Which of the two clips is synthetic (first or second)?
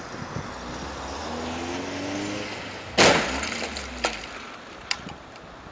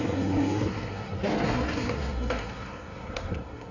second